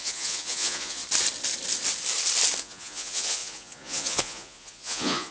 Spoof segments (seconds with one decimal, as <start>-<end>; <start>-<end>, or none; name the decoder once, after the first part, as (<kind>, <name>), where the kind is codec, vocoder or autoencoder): 0.0-1.0 (vocoder, Vocos); 2.6-5.3